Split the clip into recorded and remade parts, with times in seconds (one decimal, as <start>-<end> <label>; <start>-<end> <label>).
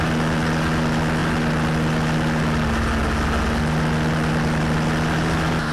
0.0-5.7 recorded